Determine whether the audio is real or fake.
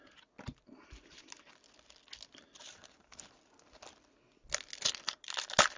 real